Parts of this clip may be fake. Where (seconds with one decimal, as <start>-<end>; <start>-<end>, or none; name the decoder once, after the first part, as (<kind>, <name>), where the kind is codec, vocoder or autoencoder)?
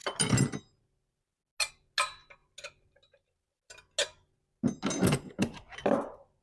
none